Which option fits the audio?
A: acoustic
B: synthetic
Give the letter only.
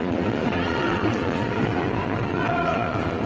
B